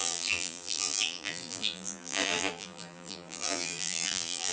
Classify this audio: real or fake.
fake